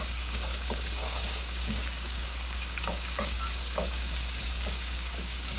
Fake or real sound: fake